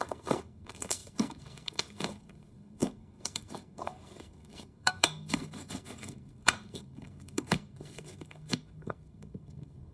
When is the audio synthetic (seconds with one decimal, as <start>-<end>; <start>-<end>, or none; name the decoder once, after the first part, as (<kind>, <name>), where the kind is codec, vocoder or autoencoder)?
0.0-9.9 (codec, SNAC)